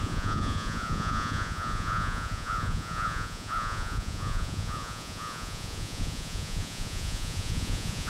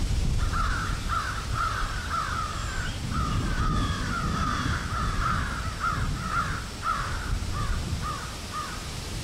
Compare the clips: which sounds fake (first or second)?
first